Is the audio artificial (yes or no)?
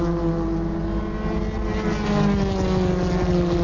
no